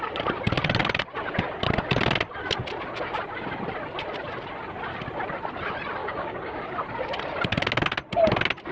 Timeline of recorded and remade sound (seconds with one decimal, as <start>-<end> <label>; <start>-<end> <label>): 0.0-6.0 recorded; 6.0-6.6 remade; 6.6-8.7 recorded